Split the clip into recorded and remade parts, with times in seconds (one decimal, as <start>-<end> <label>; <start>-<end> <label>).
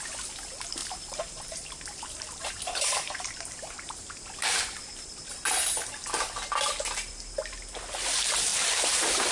0.0-0.8 recorded; 0.8-5.3 remade; 5.3-8.5 recorded; 8.5-9.3 remade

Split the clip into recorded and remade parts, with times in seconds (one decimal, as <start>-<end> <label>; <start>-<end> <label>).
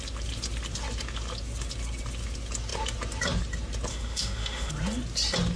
0.0-3.9 recorded; 3.9-4.7 remade; 4.7-5.6 recorded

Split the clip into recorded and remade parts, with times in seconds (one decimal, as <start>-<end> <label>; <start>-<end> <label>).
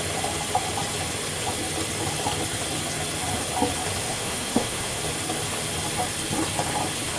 0.0-4.0 recorded; 4.0-5.0 remade; 5.0-7.2 recorded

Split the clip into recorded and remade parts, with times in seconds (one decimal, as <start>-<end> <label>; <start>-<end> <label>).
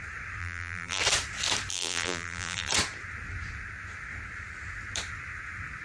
0.0-0.4 recorded; 0.4-1.0 remade; 1.0-1.7 recorded; 1.7-2.7 remade; 2.7-5.8 recorded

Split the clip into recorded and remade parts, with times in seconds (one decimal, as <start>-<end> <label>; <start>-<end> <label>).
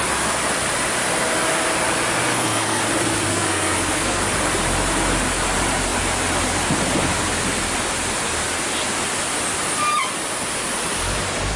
0.0-2.3 recorded; 2.3-2.8 remade; 2.8-3.3 recorded; 3.3-4.2 remade; 4.2-11.6 recorded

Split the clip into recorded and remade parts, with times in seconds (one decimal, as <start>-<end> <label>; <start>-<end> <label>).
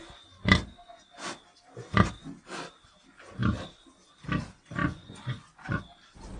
0.0-4.8 recorded; 4.8-5.8 remade; 5.8-6.4 recorded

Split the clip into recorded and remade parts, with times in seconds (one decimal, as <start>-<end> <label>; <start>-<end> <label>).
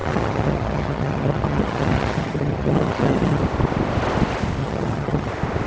0.0-3.4 remade; 3.4-4.6 recorded; 4.6-5.3 remade; 5.3-5.7 recorded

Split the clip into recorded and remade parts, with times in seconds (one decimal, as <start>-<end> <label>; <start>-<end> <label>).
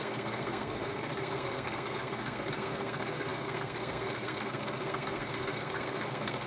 0.0-6.5 remade